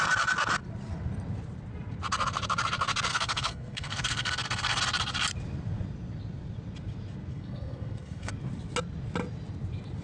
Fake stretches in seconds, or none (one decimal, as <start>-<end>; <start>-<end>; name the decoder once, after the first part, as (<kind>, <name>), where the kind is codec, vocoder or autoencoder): 3.1-4.8 (codec, SNAC); 7.3-8.3